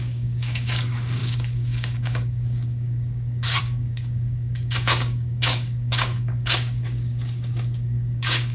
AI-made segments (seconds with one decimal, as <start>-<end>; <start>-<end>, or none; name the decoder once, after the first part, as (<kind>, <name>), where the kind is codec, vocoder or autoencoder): 0.0-8.5 (codec, DAC)